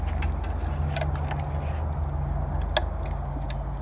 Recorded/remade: recorded